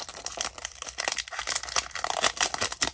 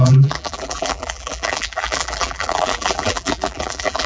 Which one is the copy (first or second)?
second